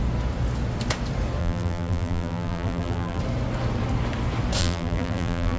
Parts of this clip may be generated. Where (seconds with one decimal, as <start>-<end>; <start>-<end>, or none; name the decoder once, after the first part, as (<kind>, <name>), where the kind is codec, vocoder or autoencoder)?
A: 1.4-3.2 (vocoder, BigVGAN v2); 4.6-5.6

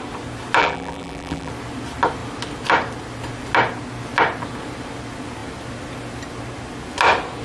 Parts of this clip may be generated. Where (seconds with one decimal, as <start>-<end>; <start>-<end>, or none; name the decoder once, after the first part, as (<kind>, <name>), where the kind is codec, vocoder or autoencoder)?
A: 0.6-1.5 (vocoder, BigVGAN v2)

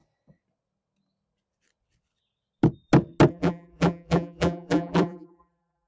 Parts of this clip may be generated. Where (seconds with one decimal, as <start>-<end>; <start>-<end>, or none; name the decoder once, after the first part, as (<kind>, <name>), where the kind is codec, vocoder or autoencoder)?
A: 3.3-5.9 (vocoder, BigVGAN v2)

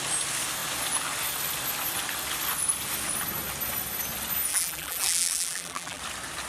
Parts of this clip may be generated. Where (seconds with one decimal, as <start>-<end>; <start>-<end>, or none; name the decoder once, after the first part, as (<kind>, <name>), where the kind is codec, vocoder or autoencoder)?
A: 4.5-6.0 (vocoder, BigVGAN v2)

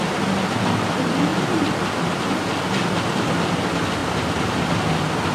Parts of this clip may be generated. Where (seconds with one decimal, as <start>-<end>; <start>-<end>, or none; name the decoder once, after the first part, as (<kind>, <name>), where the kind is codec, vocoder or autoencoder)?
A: 4.0-4.7 (vocoder, BigVGAN v2)